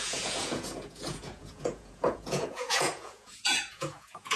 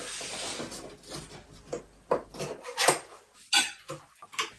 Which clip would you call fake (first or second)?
first